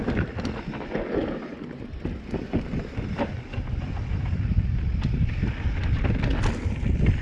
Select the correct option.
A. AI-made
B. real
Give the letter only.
B